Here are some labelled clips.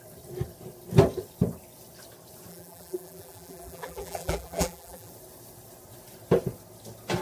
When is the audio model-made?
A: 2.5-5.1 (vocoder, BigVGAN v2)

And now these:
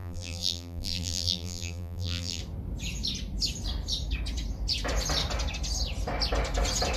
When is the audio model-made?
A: 0.0-2.4 (vocoder, BigVGAN v2)

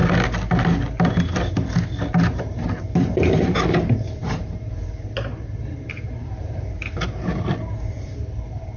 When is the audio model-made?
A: 2.4-8.8 (vocoder, BigVGAN v2)

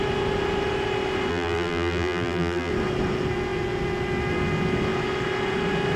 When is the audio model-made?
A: 1.3-2.7 (vocoder, BigVGAN v2)

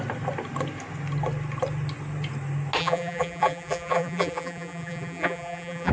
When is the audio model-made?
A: 2.8-5.9 (vocoder, BigVGAN v2)

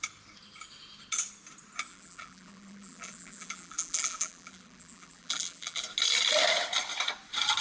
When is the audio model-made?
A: 1.9-5.8 (vocoder, BigVGAN v2)

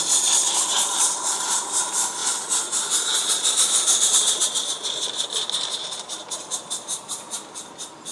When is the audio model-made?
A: 0.0-8.1 (vocoder, BigVGAN v2)

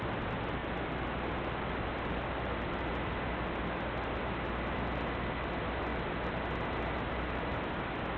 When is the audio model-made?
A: 0.6-4.2 (vocoder, BigVGAN v2); 5.9-6.6